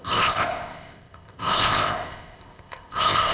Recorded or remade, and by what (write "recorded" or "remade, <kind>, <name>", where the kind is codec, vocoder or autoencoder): remade, codec, ZipCodec